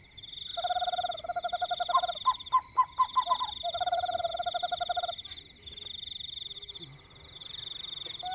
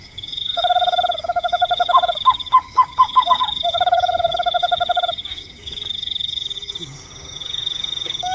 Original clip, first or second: first